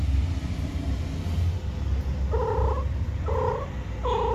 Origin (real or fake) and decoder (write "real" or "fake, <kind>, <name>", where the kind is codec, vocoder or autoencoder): real